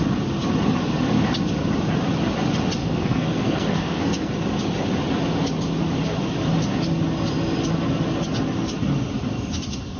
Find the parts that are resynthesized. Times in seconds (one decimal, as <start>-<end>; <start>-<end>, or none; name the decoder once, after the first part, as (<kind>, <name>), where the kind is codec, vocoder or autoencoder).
2.8-4.3 (codec, SNAC)

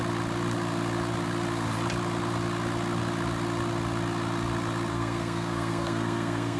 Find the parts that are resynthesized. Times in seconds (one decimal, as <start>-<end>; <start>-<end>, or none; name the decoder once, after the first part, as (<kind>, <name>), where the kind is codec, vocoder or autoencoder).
4.9-6.6 (codec, SNAC)

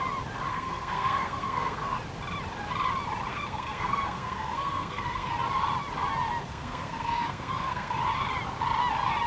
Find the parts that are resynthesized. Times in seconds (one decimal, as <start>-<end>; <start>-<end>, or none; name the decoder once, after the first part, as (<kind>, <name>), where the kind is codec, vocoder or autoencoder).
0.5-2.0 (codec, SNAC); 3.3-5.3; 6.4-8.0

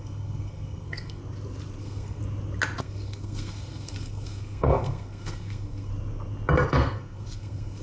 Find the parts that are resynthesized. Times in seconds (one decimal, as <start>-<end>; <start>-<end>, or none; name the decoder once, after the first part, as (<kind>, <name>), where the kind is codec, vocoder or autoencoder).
0.0-1.2 (codec, SNAC); 1.8-2.2; 2.8-5.9; 6.7-7.8

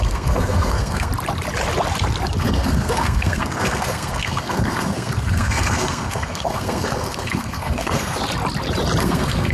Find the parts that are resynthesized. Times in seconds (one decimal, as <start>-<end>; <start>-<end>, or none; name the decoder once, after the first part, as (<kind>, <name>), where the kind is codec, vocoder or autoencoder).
0.0-1.1 (codec, SNAC); 2.4-8.2; 9.0-9.5